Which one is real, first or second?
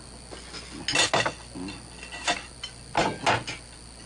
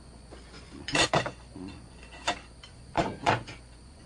first